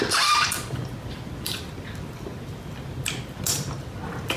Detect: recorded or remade recorded